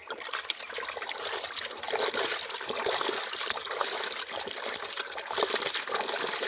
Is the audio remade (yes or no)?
yes